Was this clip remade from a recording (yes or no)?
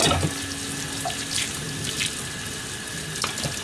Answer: no